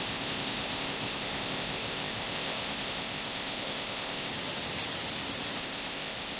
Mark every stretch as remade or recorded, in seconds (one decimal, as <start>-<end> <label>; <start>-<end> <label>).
0.0-4.3 remade; 4.3-5.6 recorded; 5.6-6.4 remade